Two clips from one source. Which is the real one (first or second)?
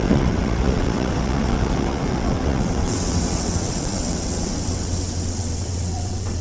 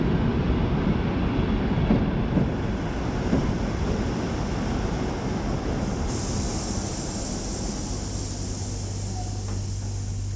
second